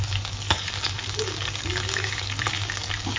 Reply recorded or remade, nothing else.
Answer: remade